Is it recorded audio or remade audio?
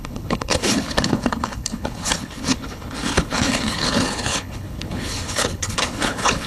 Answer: remade